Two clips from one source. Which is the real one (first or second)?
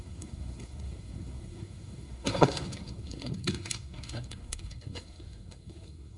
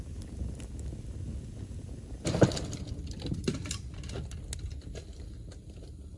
second